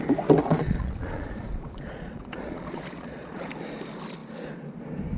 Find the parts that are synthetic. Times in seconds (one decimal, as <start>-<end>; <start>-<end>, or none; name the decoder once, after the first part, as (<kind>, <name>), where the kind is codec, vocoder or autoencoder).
0.4-3.5 (vocoder, Vocos)